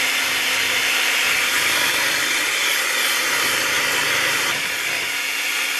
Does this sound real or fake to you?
real